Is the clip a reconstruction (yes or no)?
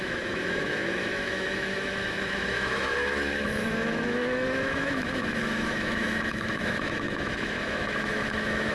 yes